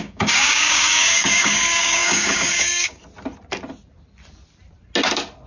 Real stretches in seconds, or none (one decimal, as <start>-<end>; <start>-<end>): 3.0-5.5